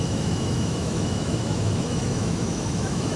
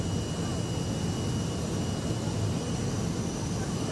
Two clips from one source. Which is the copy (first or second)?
first